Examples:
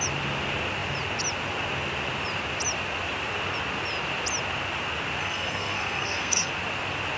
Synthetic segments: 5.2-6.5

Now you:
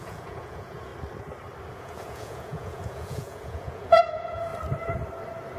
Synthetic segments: 0.0-0.9; 1.7-4.5

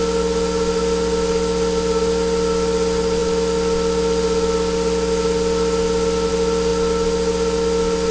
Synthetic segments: none

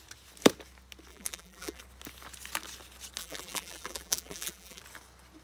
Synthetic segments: 1.1-1.8; 3.2-4.8

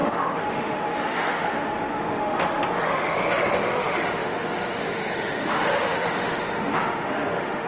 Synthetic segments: 0.0-7.7

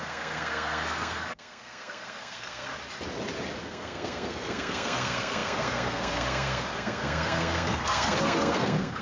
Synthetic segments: 0.0-2.7; 3.6-9.0